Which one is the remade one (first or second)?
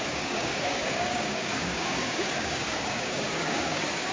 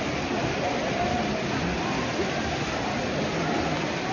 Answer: first